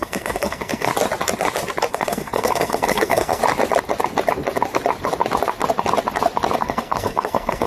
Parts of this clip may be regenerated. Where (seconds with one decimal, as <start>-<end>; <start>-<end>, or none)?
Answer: 0.0-0.9; 1.9-3.4; 6.6-7.7